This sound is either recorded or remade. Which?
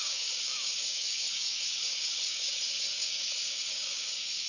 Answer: remade